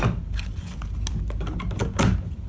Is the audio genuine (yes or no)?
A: yes